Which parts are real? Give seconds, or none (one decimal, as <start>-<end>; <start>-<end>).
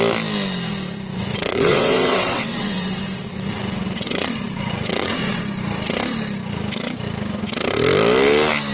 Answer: 0.0-1.1; 5.4-8.7